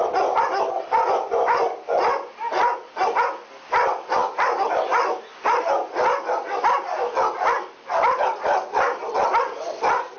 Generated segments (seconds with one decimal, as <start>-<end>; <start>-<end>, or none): none